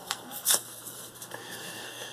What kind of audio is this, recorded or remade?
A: remade